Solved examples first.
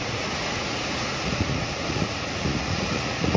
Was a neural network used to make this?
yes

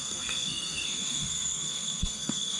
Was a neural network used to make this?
yes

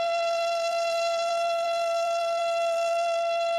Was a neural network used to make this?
yes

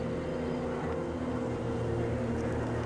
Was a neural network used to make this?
no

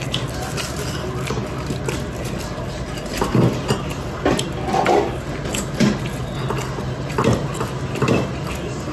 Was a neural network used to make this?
no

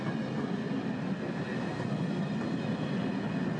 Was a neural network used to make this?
no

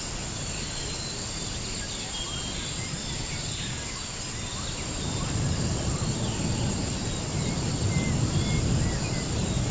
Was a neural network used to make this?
no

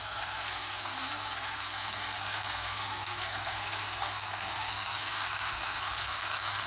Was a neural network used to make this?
yes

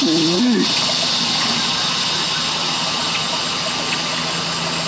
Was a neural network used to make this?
no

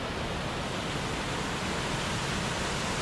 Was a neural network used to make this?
no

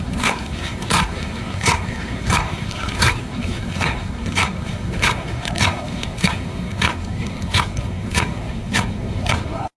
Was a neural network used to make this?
yes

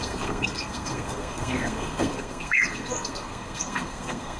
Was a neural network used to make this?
yes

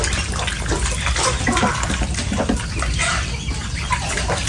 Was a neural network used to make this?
no